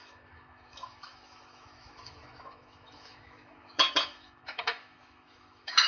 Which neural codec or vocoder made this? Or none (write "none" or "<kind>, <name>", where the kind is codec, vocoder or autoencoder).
autoencoder, DAC-VAE